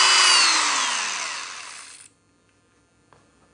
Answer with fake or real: real